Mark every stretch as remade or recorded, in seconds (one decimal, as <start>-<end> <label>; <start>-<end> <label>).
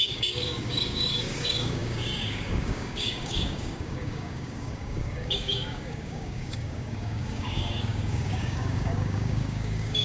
0.0-10.0 remade